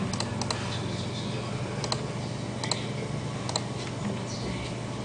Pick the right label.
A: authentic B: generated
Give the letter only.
A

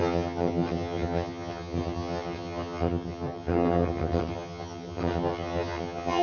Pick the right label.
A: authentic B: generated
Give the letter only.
B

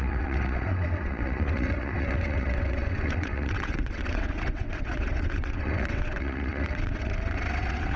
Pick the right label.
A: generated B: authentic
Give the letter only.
A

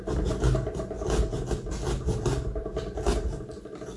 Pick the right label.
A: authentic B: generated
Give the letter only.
A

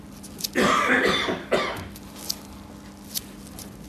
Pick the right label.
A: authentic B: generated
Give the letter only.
A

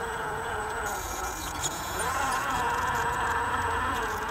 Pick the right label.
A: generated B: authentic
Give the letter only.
A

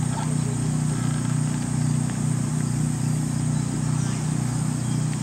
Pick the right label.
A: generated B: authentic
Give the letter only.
B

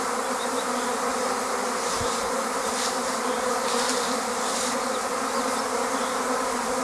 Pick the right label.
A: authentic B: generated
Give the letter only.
A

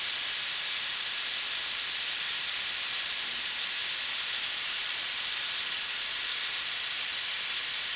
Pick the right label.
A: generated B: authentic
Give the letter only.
A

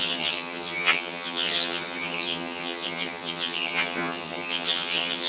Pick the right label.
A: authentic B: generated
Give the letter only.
B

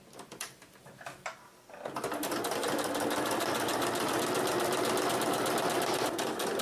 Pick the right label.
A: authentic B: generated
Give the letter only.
A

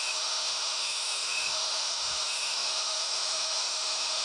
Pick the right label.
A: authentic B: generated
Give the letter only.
B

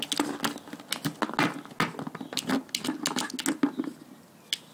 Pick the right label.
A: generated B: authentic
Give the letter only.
B